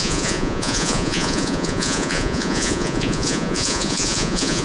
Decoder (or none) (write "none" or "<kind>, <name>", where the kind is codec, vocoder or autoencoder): vocoder, Vocos